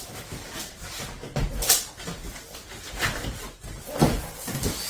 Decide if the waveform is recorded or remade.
recorded